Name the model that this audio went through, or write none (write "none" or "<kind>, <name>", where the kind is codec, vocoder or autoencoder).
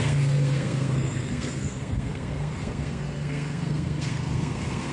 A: codec, SNAC